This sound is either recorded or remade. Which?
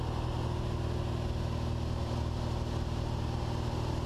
recorded